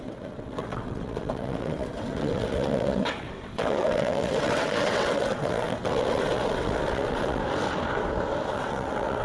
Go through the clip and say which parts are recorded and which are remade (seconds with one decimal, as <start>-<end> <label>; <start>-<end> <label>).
0.0-7.4 remade; 7.4-8.5 recorded; 8.5-9.2 remade